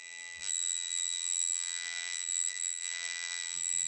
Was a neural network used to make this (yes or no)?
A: yes